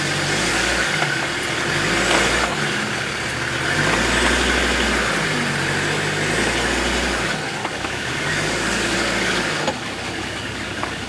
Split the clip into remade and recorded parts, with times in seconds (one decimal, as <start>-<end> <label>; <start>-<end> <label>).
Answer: 0.0-0.5 recorded; 0.5-1.2 remade; 1.2-7.6 recorded; 7.6-11.1 remade